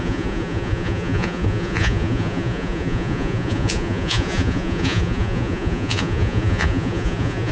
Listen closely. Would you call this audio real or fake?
fake